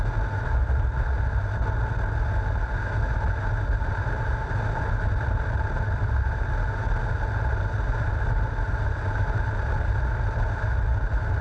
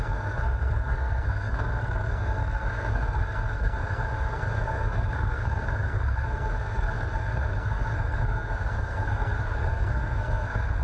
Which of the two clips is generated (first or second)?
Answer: second